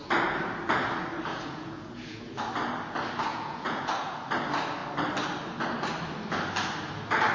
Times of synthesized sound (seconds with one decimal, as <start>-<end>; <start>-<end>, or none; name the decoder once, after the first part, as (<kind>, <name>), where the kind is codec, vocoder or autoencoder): 1.3-2.3 (vocoder, Vocos); 3.3-4.3